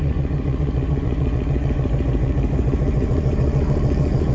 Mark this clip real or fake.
fake